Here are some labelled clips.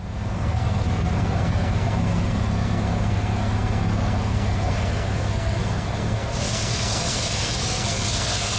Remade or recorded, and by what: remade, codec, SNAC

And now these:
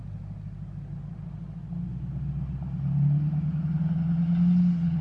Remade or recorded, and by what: recorded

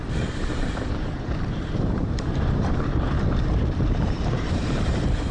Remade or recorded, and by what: remade, vocoder, BigVGAN v2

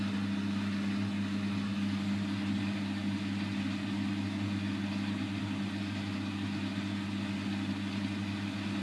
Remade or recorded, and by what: recorded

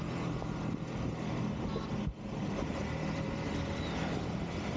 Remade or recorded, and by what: recorded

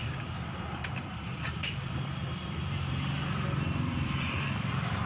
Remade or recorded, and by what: remade, vocoder, BigVGAN v2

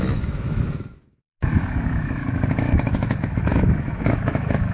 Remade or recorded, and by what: remade, autoencoder, DAC-VAE